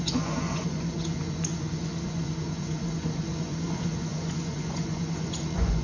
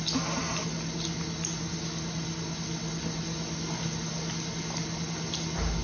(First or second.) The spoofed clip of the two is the first